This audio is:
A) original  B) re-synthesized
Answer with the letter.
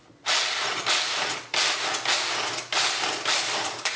A